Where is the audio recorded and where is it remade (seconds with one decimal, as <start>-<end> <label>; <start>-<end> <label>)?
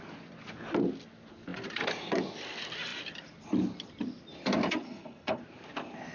0.0-4.8 recorded; 4.8-5.4 remade; 5.4-6.1 recorded